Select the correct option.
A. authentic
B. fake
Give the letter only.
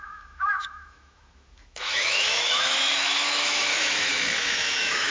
B